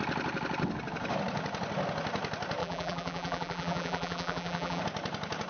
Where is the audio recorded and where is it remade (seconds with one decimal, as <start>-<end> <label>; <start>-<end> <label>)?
0.0-2.6 recorded; 2.6-4.8 remade; 4.8-5.5 recorded

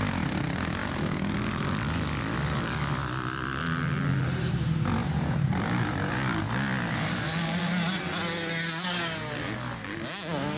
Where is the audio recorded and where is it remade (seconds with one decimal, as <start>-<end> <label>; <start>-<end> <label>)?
0.0-5.0 recorded; 5.0-6.4 remade; 6.4-10.6 recorded

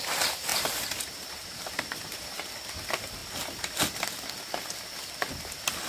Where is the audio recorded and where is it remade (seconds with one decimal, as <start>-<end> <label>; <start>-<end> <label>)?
0.0-0.5 recorded; 0.5-2.5 remade; 2.5-5.9 recorded

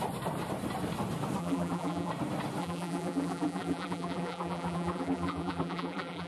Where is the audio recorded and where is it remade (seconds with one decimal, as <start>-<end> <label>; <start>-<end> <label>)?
0.0-1.4 recorded; 1.4-2.1 remade; 2.1-2.6 recorded; 2.6-6.3 remade